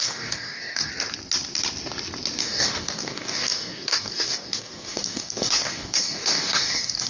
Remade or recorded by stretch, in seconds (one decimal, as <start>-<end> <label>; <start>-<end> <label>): 0.0-0.9 remade; 0.9-2.4 recorded; 2.4-7.1 remade